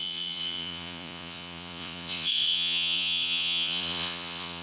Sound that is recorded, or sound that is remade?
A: remade